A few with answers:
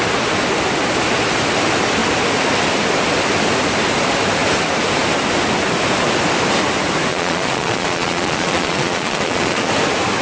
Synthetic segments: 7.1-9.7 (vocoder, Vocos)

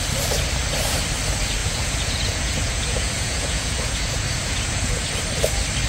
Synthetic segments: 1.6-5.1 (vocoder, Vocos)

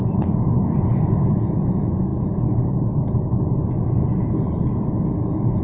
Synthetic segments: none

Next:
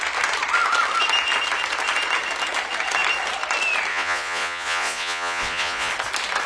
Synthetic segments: 3.9-5.9 (vocoder, Vocos)

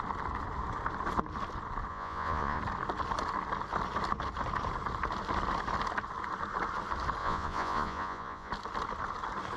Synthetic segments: 1.9-2.6 (vocoder, Vocos); 7.2-8.5